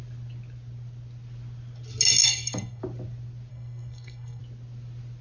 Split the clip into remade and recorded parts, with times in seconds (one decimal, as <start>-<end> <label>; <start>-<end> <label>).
0.0-2.2 recorded; 2.2-2.8 remade; 2.8-3.5 recorded; 3.5-4.4 remade; 4.4-5.2 recorded